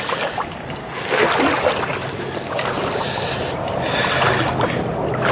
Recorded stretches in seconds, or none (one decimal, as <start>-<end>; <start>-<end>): 0.0-0.8; 1.3-5.3